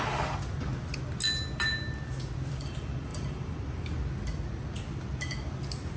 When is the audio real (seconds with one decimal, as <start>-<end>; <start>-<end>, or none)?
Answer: 0.0-3.1; 4.0-6.0